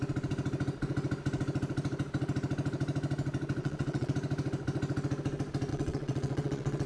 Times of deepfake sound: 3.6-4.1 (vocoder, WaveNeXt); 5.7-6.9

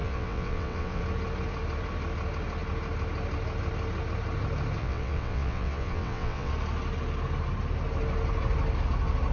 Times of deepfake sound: 0.0-1.0 (vocoder, WaveNeXt); 4.8-6.5

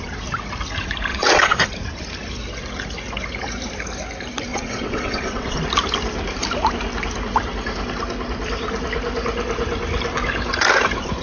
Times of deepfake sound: 1.1-1.7 (vocoder, WaveNeXt); 4.5-5.6

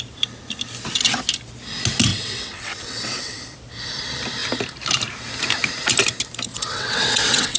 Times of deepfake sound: 2.1-3.4 (vocoder, WaveNeXt); 6.5-7.6

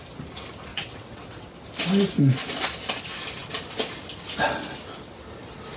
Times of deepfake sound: 0.7-1.5 (vocoder, WaveNeXt)